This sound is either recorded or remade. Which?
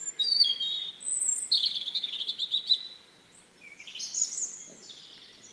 recorded